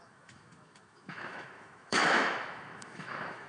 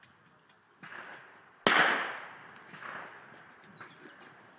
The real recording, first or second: second